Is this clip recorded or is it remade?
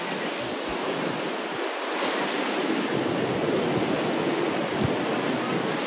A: recorded